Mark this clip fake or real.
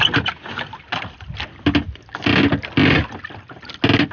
real